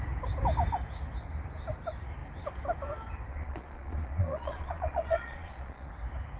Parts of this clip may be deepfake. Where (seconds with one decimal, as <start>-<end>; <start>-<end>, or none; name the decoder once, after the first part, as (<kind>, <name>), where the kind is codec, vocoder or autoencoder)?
3.3-5.9 (vocoder, Vocos)